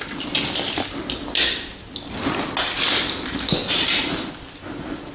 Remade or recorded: recorded